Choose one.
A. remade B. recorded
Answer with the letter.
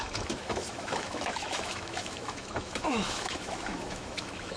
A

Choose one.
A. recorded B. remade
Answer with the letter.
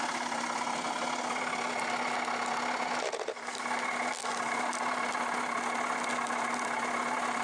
A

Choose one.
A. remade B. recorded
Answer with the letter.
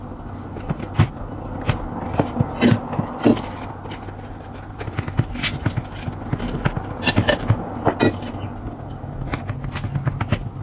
B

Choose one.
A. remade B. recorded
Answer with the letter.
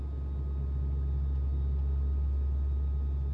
B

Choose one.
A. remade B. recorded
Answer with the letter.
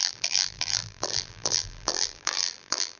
A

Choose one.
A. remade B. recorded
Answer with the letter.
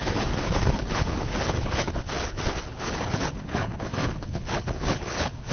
A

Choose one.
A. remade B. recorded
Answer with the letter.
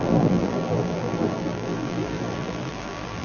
A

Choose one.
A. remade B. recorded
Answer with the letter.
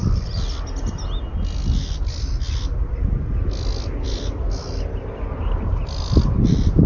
B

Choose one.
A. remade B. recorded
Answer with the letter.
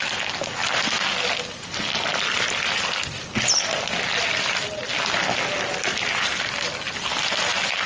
B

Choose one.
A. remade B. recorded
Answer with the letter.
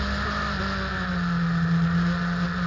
B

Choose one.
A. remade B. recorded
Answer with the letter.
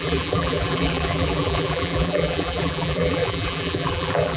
A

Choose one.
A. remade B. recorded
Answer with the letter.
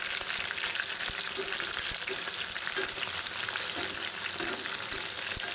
B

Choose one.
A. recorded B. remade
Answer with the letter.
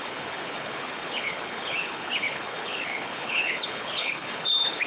B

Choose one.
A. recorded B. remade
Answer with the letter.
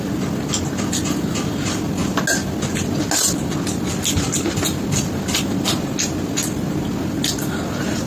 A